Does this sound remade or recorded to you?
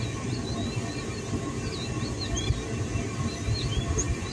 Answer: recorded